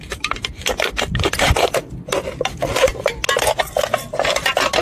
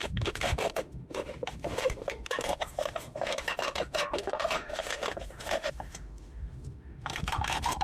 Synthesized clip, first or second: second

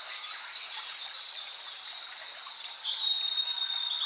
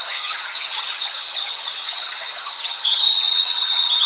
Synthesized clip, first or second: second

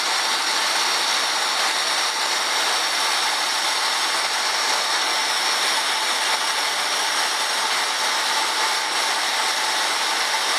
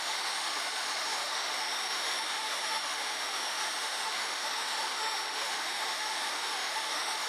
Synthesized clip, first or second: second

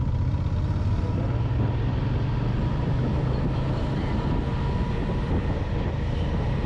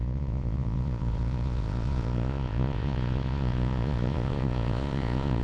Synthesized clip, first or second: second